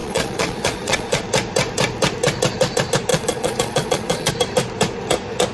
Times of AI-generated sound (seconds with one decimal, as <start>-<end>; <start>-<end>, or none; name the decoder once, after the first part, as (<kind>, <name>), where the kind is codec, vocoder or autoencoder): 0.0-1.2 (vocoder, Vocos); 3.1-4.3